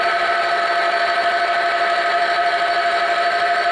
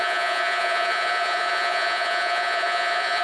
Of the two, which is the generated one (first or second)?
second